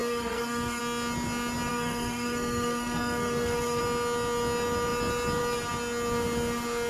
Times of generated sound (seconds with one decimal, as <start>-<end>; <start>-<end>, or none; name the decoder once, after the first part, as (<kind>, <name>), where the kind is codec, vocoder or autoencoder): 0.0-0.8 (codec, SNAC); 1.7-3.8